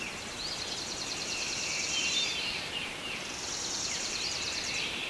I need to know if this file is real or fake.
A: fake